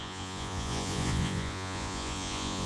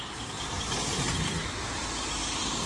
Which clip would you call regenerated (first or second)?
first